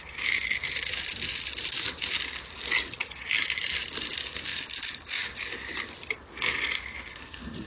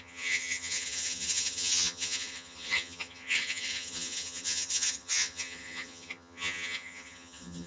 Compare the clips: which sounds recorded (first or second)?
first